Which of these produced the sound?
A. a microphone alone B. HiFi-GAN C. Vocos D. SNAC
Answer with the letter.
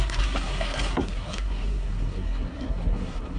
D